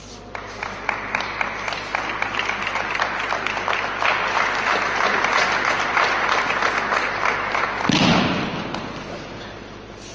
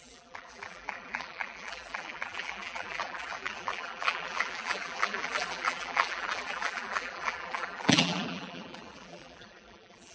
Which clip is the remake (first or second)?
second